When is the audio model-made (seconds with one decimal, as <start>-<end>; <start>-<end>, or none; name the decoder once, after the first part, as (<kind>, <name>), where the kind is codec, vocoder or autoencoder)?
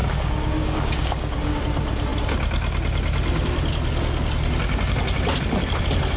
0.0-1.6 (codec, DAC)